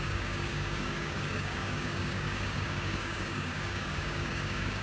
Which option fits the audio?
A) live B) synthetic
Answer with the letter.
B